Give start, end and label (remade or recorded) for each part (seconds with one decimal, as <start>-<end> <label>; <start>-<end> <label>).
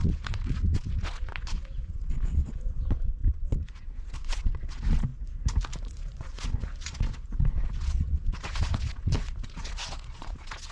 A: 0.0-5.1 remade; 5.1-5.8 recorded; 5.8-10.7 remade